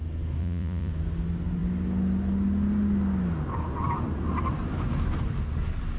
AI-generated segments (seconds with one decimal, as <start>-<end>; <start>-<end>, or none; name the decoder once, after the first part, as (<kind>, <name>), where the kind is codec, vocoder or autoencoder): 0.4-0.9 (vocoder, Vocos)